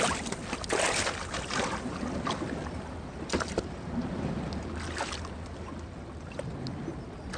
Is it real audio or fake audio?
real